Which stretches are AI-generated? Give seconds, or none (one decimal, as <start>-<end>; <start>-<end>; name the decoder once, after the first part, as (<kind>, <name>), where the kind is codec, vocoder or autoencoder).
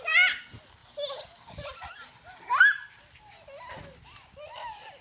none